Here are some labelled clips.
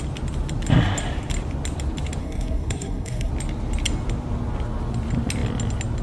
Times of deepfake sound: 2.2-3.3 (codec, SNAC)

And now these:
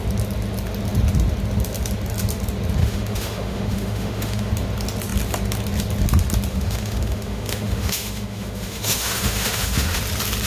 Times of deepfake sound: 2.8-4.5 (autoencoder, DAC-VAE); 6.5-10.0

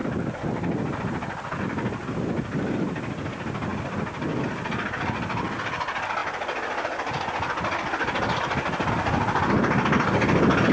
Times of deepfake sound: none

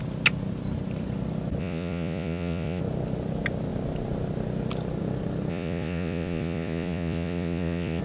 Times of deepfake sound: 1.6-2.8 (vocoder, Vocos); 5.5-8.0